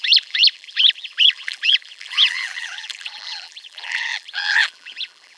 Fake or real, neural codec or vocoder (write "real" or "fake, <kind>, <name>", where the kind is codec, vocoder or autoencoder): fake, vocoder, BigVGAN v2